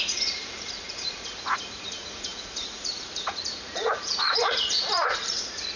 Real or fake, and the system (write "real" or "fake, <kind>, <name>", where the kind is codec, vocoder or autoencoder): fake, vocoder, Vocos